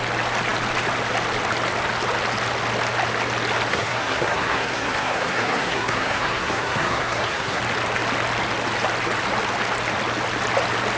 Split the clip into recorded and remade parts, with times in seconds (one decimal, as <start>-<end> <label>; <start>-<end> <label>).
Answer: 0.0-3.7 recorded; 3.7-7.6 remade; 7.6-11.0 recorded